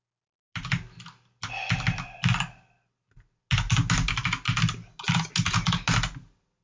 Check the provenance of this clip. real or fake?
real